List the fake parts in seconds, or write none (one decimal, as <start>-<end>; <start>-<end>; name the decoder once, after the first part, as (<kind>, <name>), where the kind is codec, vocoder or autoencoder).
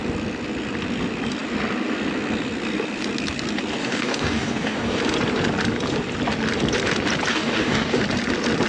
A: 3.8-5.0 (codec, DAC); 7.3-8.0